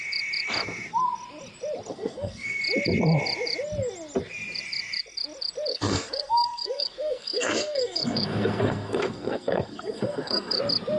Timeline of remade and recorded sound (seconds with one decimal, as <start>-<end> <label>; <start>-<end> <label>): 0.0-1.9 recorded; 1.9-2.6 remade; 2.6-5.7 recorded; 5.7-10.6 remade; 10.6-11.0 recorded